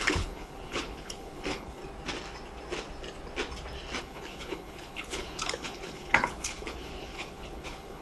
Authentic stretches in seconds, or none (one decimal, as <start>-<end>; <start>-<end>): 1.8-4.0